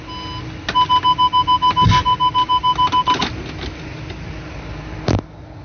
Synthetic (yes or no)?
no